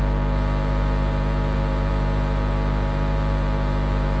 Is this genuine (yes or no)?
no